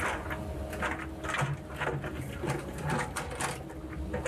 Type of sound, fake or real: real